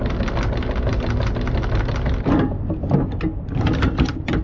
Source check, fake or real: real